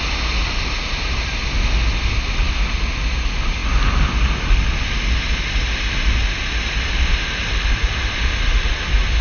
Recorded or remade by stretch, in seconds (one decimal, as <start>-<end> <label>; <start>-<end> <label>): 0.0-9.2 recorded